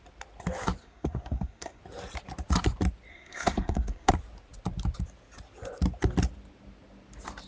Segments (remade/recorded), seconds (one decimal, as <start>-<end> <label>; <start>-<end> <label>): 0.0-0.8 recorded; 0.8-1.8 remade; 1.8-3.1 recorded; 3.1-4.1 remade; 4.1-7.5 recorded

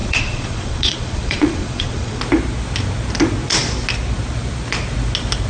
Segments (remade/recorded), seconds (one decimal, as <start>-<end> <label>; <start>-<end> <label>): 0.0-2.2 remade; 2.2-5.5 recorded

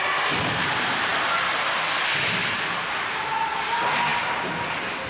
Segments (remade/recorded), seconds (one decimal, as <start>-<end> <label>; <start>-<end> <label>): 0.0-5.1 recorded

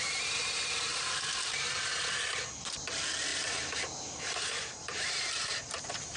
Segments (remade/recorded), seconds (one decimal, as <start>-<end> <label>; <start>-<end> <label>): 0.0-0.9 recorded; 0.9-1.7 remade; 1.7-3.3 recorded; 3.3-5.8 remade; 5.8-6.2 recorded

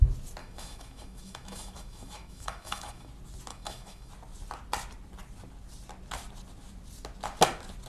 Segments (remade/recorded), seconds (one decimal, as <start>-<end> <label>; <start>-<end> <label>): 0.0-0.4 recorded; 0.4-3.1 remade; 3.1-3.5 recorded; 3.5-4.1 remade; 4.1-7.9 recorded

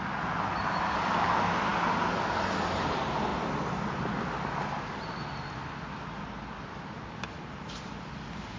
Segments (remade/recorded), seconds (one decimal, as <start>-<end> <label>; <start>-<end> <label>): 0.0-8.6 recorded